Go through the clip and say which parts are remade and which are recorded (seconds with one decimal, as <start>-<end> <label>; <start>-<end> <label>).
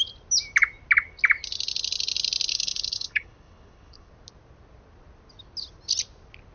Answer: 0.0-2.5 recorded; 2.5-4.1 remade; 4.1-6.5 recorded